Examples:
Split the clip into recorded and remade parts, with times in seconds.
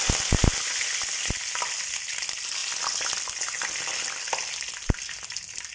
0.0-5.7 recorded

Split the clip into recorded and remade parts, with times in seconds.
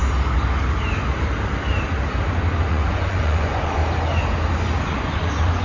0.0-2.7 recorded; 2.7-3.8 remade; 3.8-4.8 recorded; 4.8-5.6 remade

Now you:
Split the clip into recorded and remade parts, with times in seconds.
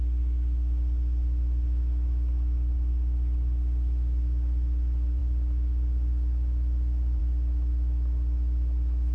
0.0-9.1 recorded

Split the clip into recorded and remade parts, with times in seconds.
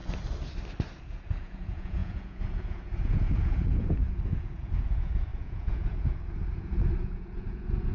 0.0-1.1 recorded; 1.1-7.9 remade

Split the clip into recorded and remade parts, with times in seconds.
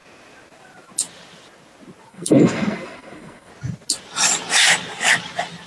0.0-2.1 recorded; 2.1-3.5 remade; 3.5-5.7 recorded